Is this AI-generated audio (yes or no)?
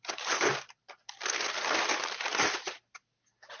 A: no